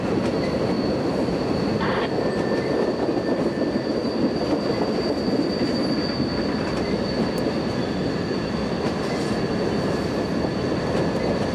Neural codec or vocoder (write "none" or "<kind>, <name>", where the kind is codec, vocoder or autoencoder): none